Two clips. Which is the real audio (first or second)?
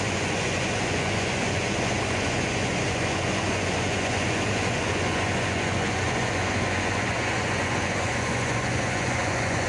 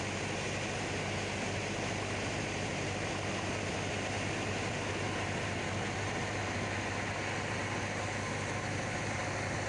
second